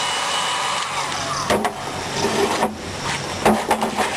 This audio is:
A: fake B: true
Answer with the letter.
B